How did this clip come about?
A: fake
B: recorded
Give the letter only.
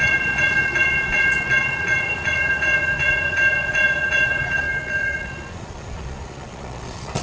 A